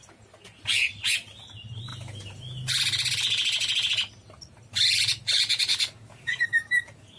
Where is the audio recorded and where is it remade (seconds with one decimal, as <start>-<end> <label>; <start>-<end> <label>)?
0.0-5.7 recorded; 5.7-7.2 remade